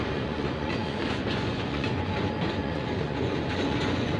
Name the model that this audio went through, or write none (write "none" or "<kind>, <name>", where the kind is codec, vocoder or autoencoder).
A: vocoder, Vocos